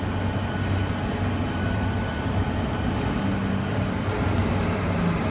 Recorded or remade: recorded